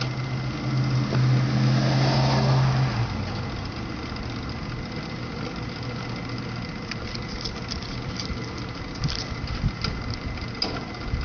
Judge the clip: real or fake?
real